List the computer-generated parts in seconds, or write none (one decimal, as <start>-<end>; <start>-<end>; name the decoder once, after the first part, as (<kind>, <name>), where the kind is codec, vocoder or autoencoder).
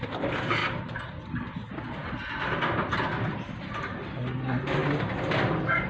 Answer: none